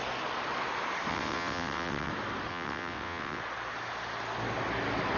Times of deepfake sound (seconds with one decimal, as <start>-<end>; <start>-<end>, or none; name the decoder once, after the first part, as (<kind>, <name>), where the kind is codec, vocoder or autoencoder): 1.1-2.1 (vocoder, WaveNeXt); 2.5-3.4